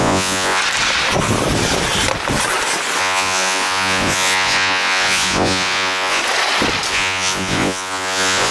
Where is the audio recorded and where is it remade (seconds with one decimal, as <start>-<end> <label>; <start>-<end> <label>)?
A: 0.0-0.6 remade; 0.6-3.0 recorded; 3.0-6.2 remade; 6.2-6.9 recorded; 6.9-8.5 remade